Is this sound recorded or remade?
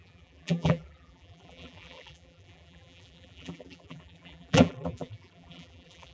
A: remade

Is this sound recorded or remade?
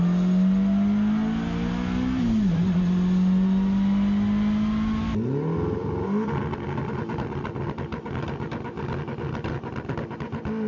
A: recorded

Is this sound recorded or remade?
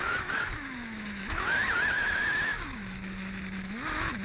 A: remade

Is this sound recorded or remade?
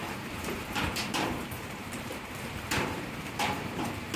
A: remade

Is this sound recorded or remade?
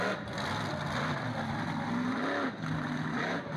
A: recorded